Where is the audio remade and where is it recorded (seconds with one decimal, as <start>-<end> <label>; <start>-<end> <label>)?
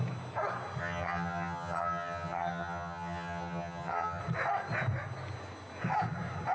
0.0-0.8 recorded; 0.8-4.2 remade; 4.2-6.5 recorded